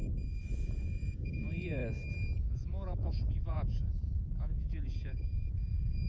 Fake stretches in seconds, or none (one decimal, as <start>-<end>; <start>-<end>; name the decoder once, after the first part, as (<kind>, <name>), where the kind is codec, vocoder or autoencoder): 0.0-1.8 (vocoder, Vocos); 2.4-6.1